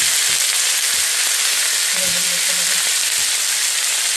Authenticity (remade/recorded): recorded